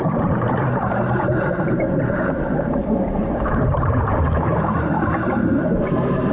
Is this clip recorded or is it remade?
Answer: remade